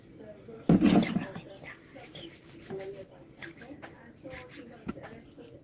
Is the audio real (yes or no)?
yes